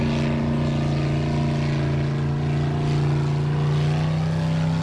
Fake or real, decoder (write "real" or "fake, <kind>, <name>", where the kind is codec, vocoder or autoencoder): real